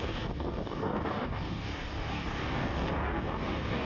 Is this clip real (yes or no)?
no